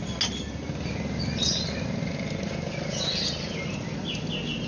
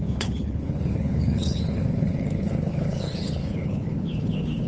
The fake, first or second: second